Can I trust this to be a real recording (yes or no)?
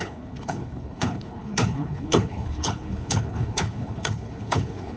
no